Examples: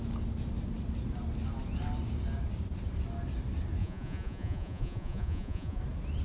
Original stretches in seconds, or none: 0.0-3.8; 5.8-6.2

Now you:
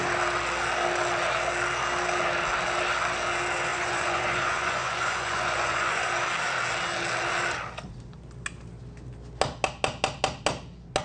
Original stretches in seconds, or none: 0.0-3.7; 6.1-11.0

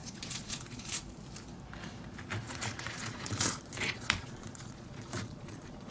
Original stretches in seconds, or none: 1.0-2.4

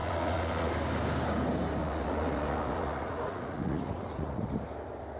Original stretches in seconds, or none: 0.7-1.8; 4.5-5.2

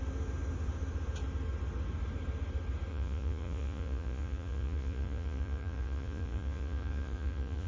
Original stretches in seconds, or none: 0.0-2.9

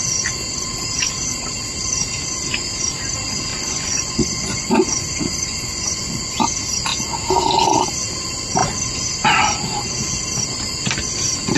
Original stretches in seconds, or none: 0.0-3.5; 6.3-11.6